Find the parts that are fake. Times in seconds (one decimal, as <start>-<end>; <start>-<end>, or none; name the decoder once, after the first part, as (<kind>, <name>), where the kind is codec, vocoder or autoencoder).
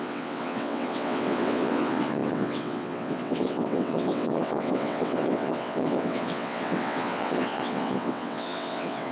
0.0-9.1 (vocoder, WaveNeXt)